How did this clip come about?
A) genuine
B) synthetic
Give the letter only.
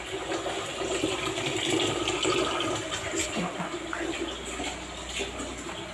A